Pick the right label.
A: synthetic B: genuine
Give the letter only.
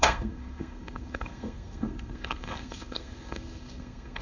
A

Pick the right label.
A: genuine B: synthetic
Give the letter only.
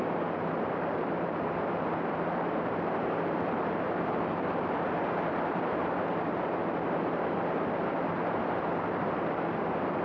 B